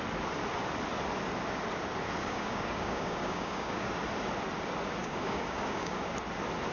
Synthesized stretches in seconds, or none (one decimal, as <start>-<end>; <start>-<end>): 2.2-3.9; 5.0-6.1